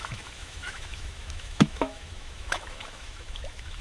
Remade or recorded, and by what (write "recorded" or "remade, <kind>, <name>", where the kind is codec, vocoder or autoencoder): remade, autoencoder, DAC-VAE